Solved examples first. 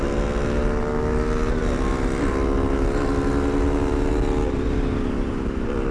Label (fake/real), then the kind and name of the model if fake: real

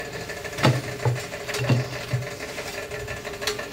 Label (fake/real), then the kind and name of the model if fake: real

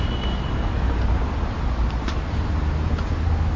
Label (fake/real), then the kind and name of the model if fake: real